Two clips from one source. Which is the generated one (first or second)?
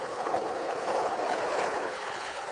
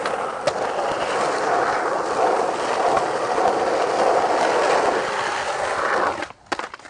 first